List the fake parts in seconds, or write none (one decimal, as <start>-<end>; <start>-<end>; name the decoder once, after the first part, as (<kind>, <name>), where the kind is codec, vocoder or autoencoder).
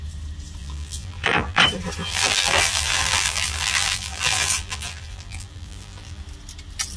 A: 0.6-1.6 (vocoder, BigVGAN v2); 2.0-6.2